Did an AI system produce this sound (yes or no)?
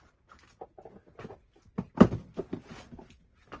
no